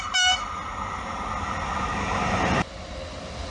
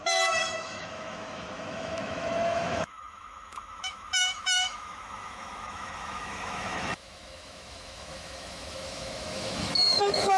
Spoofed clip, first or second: second